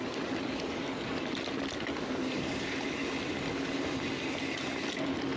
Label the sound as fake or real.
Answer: real